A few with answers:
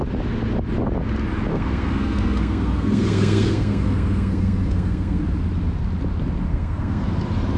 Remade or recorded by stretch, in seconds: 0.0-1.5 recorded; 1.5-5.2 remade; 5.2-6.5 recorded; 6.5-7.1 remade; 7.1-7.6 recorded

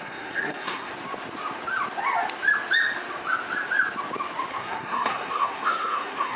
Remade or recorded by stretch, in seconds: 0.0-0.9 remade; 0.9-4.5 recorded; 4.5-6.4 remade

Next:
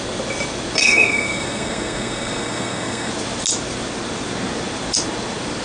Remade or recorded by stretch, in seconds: 0.0-0.8 recorded; 0.8-3.1 remade; 3.1-5.6 recorded

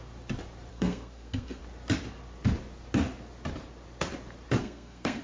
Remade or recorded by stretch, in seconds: 0.0-0.7 recorded; 0.7-1.6 remade; 1.6-4.6 recorded; 4.6-5.2 remade

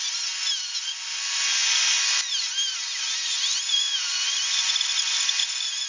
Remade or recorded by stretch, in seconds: 0.0-5.9 recorded

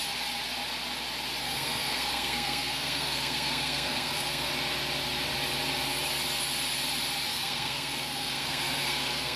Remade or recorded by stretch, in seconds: 0.0-1.4 recorded; 1.4-4.5 remade; 4.5-7.3 recorded; 7.3-9.4 remade

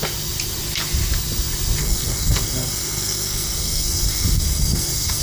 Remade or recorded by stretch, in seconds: 0.0-1.8 recorded; 1.8-5.2 remade